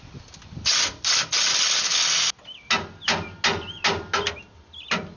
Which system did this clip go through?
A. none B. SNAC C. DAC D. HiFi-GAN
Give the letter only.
A